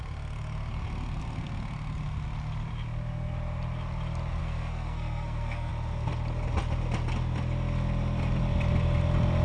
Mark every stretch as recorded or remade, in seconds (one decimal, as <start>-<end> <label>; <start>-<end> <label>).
0.0-4.4 recorded; 4.4-5.7 remade; 5.7-9.4 recorded